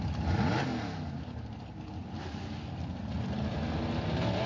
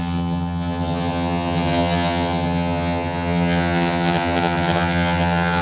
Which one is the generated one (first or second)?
second